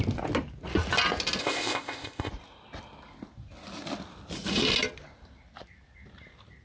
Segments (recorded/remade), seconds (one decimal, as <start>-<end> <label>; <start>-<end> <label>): 0.0-1.4 recorded; 1.4-2.3 remade; 2.3-6.6 recorded